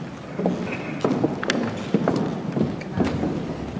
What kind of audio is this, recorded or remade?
recorded